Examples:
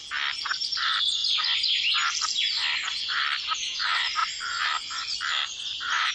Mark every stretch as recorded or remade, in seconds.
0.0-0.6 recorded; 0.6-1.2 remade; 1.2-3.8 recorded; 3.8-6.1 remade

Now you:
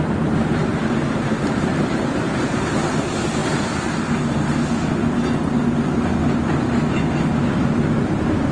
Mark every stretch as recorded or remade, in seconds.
0.0-0.6 recorded; 0.6-2.9 remade; 2.9-8.5 recorded

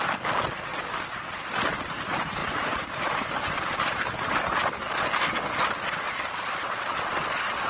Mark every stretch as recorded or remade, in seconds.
0.0-0.7 recorded; 0.7-1.5 remade; 1.5-2.4 recorded; 2.4-3.3 remade; 3.3-7.7 recorded

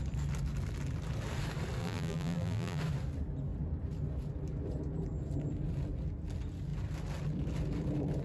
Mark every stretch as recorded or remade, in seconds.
0.0-1.8 recorded; 1.8-2.8 remade; 2.8-8.2 recorded

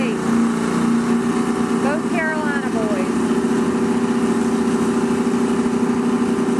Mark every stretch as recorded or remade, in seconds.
0.0-6.6 recorded

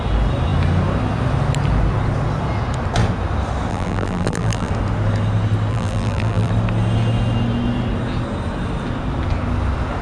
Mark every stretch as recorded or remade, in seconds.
0.0-3.7 recorded; 3.7-4.7 remade; 4.7-5.7 recorded; 5.7-6.5 remade; 6.5-10.0 recorded

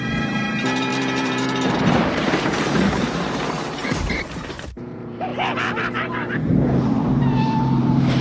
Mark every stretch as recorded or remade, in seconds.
0.0-8.2 remade

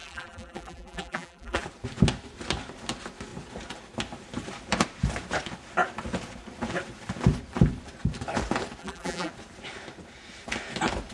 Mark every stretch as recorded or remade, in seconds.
0.0-1.6 remade; 1.6-8.8 recorded; 8.8-9.3 remade; 9.3-11.1 recorded